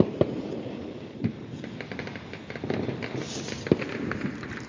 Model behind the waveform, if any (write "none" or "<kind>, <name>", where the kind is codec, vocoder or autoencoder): vocoder, BigVGAN v2